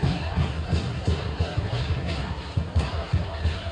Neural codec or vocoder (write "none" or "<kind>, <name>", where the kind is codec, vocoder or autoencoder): codec, SNAC